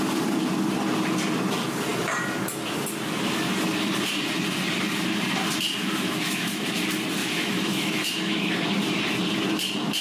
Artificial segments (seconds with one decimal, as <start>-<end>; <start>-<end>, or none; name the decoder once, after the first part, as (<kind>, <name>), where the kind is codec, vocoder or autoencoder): 5.8-6.8 (autoencoder, DAC-VAE); 7.2-8.5